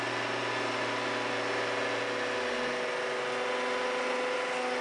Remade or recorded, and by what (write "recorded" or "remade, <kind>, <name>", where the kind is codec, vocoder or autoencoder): recorded